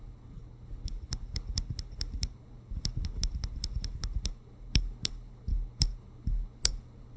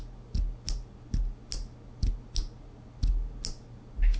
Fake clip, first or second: first